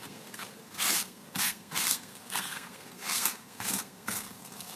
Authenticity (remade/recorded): remade